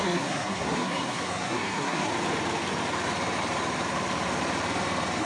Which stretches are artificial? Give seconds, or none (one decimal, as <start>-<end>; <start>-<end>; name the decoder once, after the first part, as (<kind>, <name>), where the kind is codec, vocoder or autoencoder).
0.0-2.1 (codec, SNAC)